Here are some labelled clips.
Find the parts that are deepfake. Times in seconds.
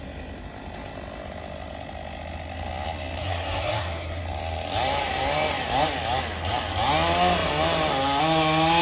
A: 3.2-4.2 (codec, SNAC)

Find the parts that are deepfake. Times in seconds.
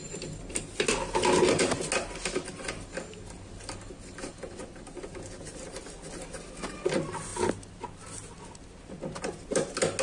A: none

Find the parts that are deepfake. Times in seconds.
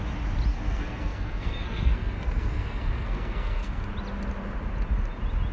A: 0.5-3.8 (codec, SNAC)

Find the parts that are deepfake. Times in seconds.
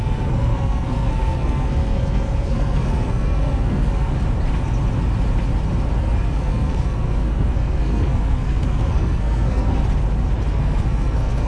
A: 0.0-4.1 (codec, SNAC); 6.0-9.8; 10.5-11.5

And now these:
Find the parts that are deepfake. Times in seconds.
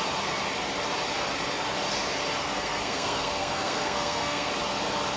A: 2.4-4.5 (codec, SNAC)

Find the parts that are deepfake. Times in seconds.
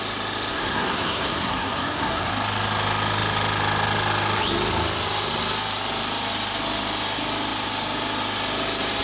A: 0.5-2.3 (codec, SNAC)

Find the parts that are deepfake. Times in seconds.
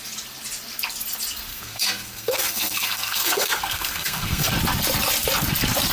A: 1.5-4.5 (codec, SNAC)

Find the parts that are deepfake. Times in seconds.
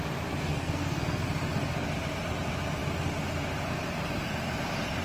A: 0.5-1.2 (codec, SNAC)